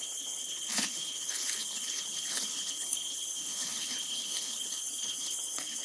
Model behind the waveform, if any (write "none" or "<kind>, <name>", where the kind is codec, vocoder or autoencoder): codec, HILCodec